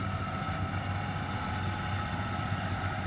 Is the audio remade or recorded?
recorded